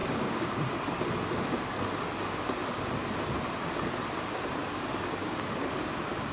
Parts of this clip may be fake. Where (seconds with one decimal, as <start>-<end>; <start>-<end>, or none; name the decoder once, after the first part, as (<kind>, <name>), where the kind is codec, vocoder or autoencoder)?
0.0-0.6 (codec, DAC); 5.2-5.7